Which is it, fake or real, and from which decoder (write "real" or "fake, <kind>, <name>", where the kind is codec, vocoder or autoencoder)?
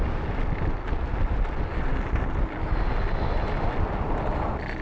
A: real